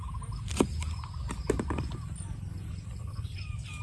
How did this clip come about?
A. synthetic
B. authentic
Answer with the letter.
B